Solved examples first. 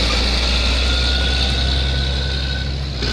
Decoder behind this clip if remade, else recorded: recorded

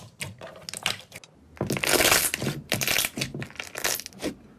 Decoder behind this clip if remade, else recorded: recorded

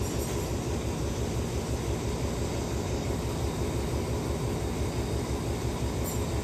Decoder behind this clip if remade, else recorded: recorded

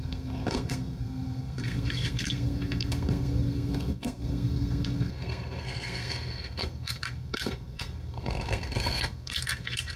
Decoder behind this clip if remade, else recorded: remade, codec, SNAC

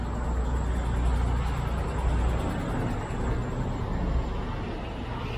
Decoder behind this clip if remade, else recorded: recorded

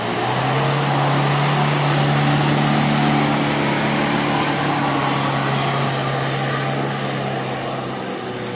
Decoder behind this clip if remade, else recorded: recorded